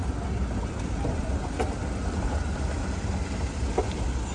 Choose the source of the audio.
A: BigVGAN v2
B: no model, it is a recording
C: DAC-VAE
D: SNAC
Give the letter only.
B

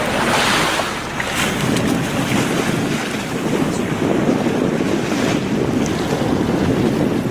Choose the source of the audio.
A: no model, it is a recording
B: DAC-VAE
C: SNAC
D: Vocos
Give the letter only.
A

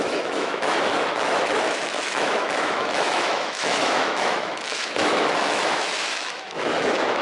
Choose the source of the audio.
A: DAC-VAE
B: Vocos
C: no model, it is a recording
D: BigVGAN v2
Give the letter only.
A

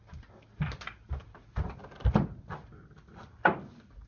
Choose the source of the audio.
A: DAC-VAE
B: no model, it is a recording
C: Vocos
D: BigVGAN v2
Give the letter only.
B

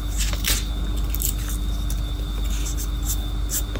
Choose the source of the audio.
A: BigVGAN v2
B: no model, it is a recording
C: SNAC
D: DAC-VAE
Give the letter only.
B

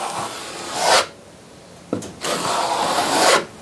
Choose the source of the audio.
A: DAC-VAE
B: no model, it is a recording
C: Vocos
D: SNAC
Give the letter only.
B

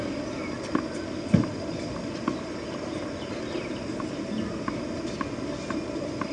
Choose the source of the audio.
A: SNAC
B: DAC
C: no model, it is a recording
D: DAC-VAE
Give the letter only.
C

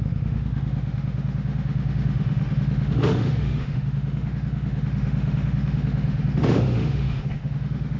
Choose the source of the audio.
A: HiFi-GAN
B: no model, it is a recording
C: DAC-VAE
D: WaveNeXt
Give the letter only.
C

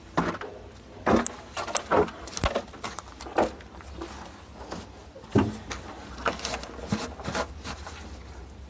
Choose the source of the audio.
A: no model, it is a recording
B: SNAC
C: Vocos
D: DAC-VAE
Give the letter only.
A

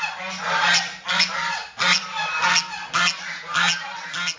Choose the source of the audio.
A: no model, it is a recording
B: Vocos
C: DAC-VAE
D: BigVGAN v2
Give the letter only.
A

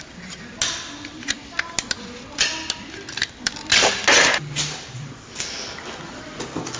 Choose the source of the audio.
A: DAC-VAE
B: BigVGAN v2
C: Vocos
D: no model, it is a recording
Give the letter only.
D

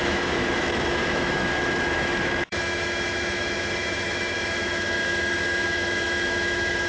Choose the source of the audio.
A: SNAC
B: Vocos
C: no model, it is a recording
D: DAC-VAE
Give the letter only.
D